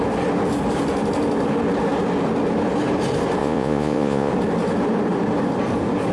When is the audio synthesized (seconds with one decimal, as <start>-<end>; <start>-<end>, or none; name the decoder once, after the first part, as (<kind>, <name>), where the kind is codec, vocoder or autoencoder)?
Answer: 3.4-4.3 (vocoder, Vocos)